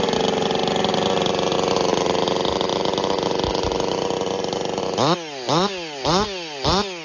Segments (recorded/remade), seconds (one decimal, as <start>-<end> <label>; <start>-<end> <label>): 0.0-7.0 recorded